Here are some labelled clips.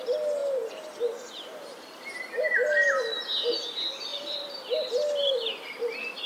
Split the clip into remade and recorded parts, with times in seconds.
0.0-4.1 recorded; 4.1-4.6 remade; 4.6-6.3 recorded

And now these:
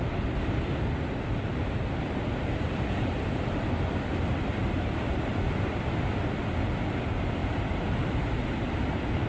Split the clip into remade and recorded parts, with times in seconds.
0.0-9.3 remade